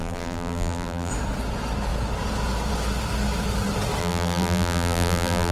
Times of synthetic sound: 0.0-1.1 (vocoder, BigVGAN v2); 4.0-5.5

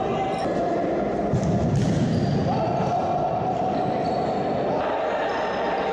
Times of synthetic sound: none

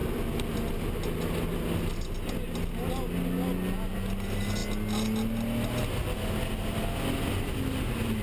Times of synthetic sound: none

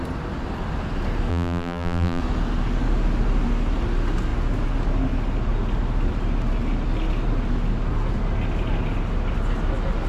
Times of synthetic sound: 1.3-2.2 (vocoder, BigVGAN v2)

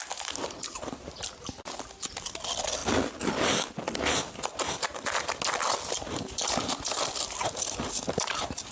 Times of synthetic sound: none

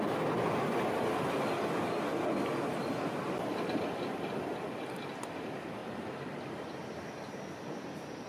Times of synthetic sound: 5.8-6.6 (vocoder, BigVGAN v2)